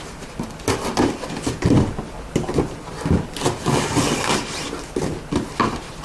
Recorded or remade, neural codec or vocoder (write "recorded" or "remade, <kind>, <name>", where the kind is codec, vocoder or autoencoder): recorded